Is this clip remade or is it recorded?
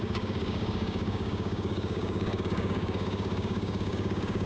remade